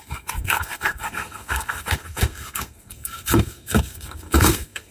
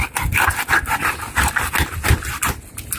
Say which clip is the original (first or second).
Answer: second